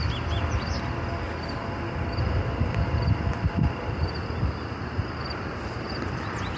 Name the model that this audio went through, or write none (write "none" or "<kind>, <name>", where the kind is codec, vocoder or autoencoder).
none